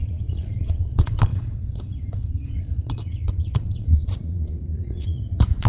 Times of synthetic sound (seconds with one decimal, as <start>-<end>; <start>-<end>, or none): 0.0-5.7